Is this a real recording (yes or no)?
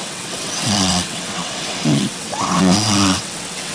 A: no